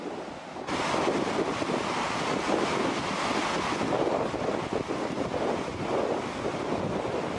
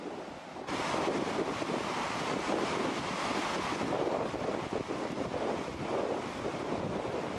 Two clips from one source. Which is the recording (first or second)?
first